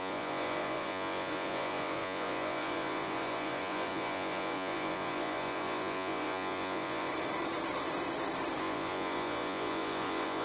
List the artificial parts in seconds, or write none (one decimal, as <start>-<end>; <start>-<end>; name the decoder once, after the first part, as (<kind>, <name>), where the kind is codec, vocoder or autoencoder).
0.0-7.1 (vocoder, Vocos); 8.6-10.4